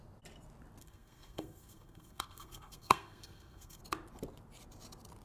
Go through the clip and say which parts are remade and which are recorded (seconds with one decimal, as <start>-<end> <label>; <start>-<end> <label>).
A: 0.0-0.8 recorded; 0.8-3.8 remade; 3.8-5.2 recorded